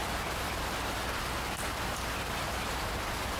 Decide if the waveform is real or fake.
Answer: real